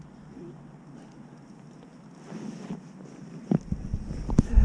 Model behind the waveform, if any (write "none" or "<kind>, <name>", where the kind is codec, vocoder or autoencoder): none